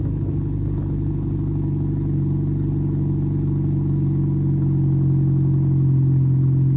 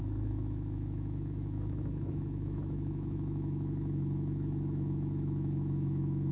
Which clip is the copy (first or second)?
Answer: second